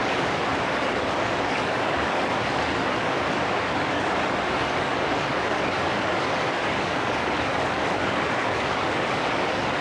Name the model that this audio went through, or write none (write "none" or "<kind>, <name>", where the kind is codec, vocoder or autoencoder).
codec, DAC